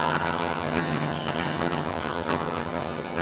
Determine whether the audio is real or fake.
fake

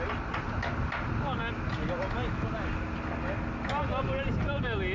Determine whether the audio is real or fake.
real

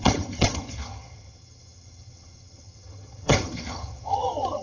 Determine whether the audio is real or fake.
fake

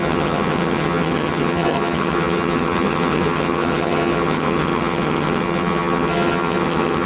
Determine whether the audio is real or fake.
fake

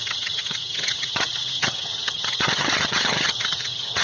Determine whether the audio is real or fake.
fake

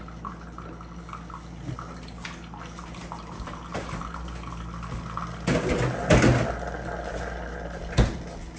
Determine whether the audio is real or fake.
real